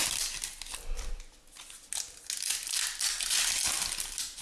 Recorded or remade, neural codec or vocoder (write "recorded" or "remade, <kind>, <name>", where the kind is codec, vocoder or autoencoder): recorded